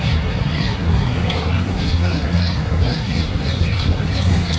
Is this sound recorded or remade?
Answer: remade